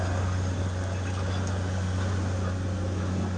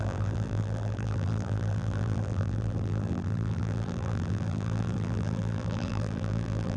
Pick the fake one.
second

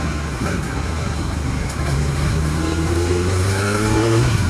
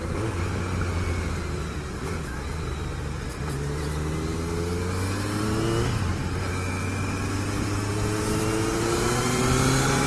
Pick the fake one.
first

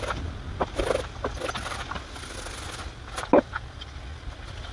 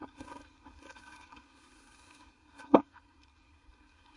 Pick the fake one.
second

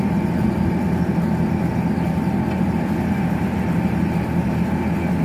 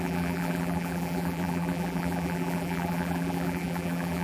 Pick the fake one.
second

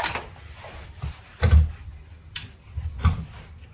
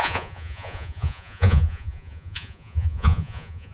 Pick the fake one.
second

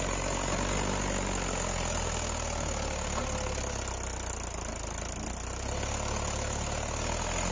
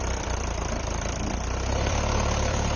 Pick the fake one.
second